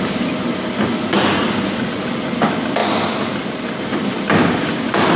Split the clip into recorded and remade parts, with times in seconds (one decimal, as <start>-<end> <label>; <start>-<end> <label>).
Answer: 0.0-5.2 recorded